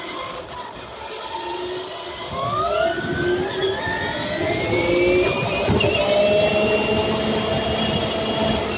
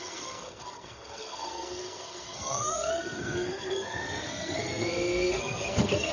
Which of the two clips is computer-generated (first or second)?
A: second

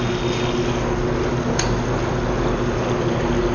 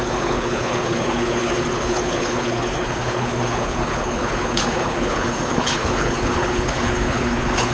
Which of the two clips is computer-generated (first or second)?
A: second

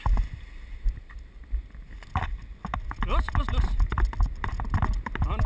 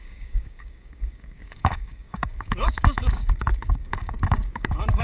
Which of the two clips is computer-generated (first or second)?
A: second